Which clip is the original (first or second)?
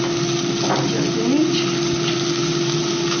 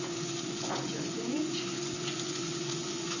first